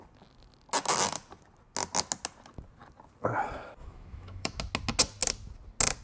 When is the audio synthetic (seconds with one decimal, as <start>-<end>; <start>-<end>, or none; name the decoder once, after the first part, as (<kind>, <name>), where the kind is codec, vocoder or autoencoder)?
3.8-4.6 (autoencoder, DAC-VAE)